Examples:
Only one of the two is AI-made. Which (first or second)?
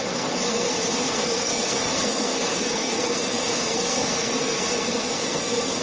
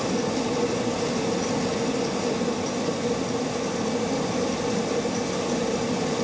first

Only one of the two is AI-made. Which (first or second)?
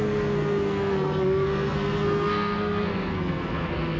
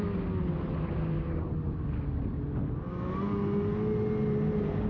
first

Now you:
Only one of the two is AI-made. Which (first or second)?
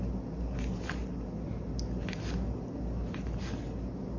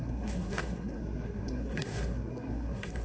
second